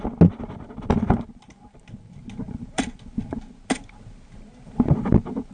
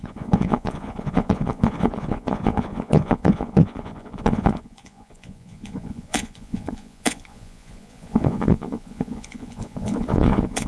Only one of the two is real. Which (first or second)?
first